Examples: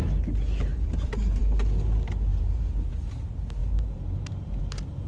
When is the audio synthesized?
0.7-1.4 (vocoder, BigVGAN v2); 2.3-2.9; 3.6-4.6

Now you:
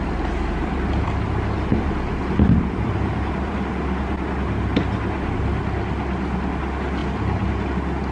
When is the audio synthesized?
1.7-4.1 (vocoder, BigVGAN v2); 7.0-8.1

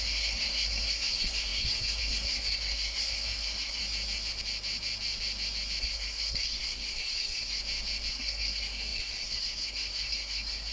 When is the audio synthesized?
0.0-3.8 (codec, SNAC); 5.8-7.6; 8.1-10.7

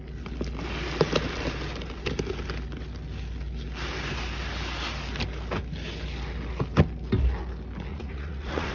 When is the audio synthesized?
7.9-8.7 (vocoder, Vocos)

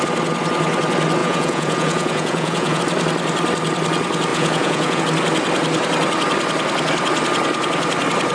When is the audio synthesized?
1.2-2.8 (vocoder, Vocos); 4.3-5.0

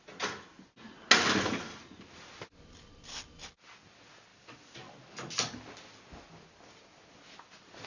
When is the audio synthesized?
none

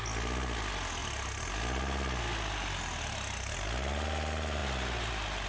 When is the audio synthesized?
none